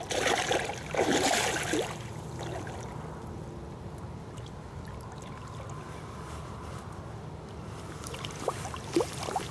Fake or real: real